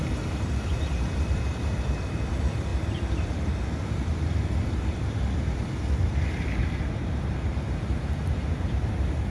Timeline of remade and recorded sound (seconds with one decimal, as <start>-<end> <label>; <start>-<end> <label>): 0.0-2.7 remade; 2.7-4.1 recorded; 4.1-9.3 remade

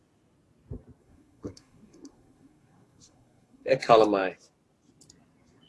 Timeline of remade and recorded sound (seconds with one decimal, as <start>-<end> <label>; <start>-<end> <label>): 0.0-1.0 recorded; 1.0-3.7 remade; 3.7-5.7 recorded

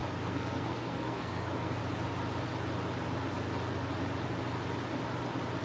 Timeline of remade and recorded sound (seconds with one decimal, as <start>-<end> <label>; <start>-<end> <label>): 0.0-1.8 remade; 1.8-5.6 recorded